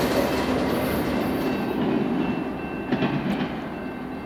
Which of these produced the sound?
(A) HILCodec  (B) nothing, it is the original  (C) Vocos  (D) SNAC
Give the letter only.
B